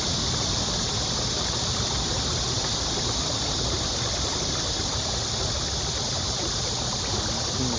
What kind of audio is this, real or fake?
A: real